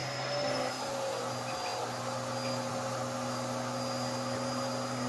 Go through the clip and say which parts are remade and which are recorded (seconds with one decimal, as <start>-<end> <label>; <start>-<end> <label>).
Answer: 0.0-5.1 recorded